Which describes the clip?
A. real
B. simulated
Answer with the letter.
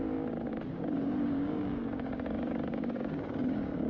B